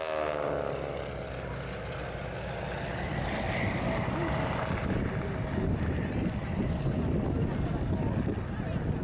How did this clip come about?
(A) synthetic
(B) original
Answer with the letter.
B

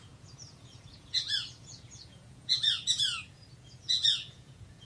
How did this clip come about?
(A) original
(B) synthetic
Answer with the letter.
B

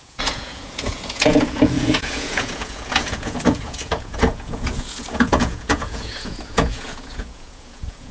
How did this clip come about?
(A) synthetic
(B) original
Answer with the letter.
A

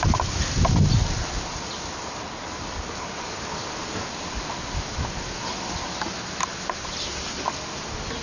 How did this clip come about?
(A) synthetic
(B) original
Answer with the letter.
B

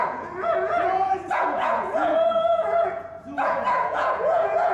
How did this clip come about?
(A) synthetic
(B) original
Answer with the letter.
A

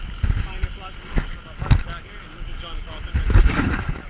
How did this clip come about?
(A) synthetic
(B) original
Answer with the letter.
B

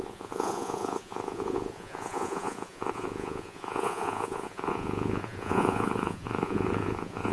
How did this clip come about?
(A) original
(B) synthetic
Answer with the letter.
B